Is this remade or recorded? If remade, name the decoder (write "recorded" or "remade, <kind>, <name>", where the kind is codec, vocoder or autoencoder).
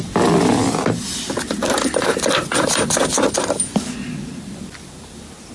recorded